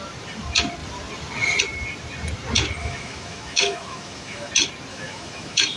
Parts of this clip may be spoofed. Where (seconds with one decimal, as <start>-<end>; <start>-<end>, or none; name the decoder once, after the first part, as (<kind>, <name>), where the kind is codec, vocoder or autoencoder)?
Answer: 2.8-4.5 (autoencoder, DAC-VAE); 4.9-5.8